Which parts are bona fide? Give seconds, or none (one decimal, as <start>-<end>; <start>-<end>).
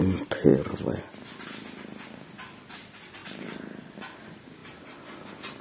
0.0-3.2; 3.9-5.6